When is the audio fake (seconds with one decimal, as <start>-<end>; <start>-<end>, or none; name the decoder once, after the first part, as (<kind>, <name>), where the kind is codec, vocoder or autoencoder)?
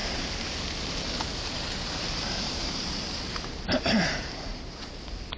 0.0-0.6 (vocoder, BigVGAN v2); 1.3-4.5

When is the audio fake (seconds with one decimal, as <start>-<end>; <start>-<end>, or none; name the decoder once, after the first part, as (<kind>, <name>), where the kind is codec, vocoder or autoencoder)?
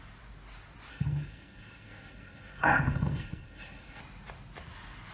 0.9-4.0 (codec, SNAC)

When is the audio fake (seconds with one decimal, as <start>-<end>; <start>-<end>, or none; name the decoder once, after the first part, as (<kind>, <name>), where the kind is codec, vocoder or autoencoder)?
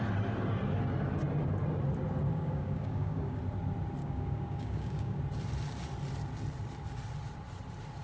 2.3-3.4 (codec, DAC); 4.0-5.2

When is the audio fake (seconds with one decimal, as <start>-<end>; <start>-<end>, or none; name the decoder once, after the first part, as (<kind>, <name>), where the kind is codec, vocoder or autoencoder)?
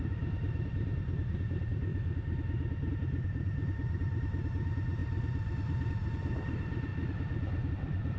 0.0-1.9 (vocoder, BigVGAN v2); 2.9-6.9; 7.7-8.2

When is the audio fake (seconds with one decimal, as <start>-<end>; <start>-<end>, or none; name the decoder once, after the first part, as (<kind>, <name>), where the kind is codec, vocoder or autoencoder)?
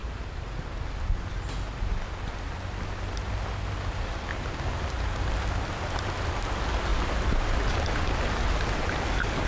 6.9-8.3 (vocoder, BigVGAN v2)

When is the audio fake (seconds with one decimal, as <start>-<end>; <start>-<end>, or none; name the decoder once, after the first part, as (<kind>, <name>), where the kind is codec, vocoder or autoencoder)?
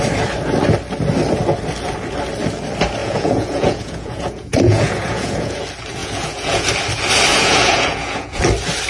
3.0-5.6 (vocoder, Vocos); 6.0-6.7; 7.3-8.4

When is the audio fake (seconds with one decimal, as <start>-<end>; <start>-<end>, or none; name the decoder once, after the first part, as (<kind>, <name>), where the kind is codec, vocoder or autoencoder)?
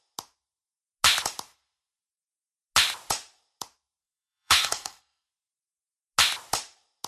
4.0-5.3 (codec, SNAC)